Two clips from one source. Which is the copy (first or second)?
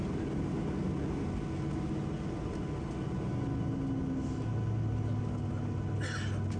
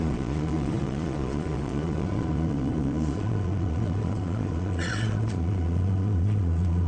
second